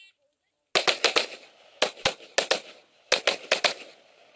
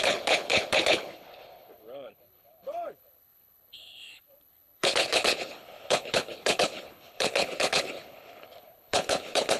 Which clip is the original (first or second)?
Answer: first